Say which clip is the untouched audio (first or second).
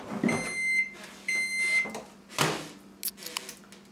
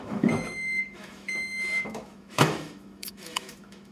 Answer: first